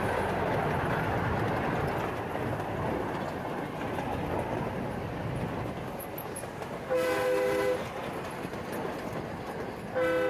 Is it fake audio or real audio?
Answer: real